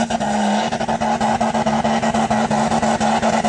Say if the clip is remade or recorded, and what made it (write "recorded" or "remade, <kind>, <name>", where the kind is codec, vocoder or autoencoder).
recorded